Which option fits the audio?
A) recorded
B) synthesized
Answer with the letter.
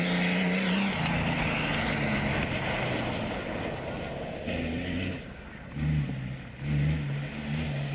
A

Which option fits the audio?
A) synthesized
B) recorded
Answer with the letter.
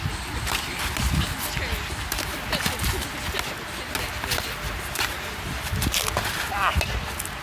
B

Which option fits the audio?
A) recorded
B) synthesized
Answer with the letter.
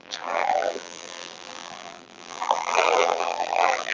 B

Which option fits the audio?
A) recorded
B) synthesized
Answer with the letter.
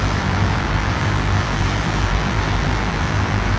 B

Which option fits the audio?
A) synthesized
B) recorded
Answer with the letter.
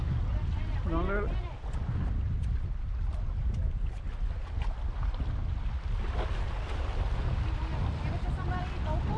B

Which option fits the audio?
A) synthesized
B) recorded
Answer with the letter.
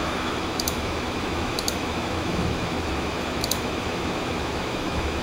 A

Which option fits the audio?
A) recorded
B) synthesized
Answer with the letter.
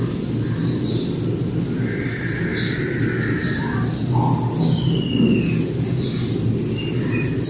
A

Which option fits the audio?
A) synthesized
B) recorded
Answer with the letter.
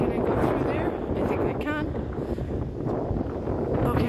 B